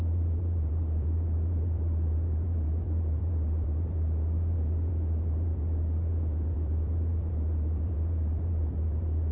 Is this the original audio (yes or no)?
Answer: no